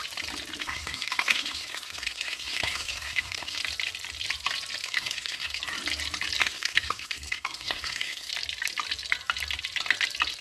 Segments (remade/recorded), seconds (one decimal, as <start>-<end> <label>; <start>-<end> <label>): 0.0-0.6 recorded; 0.6-3.6 remade; 3.6-4.8 recorded; 4.8-5.6 remade; 5.6-6.4 recorded; 6.4-8.3 remade; 8.3-10.4 recorded